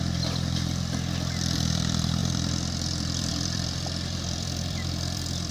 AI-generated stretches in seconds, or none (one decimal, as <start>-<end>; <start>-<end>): 0.0-5.5